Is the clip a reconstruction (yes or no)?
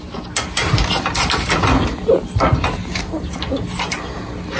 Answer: no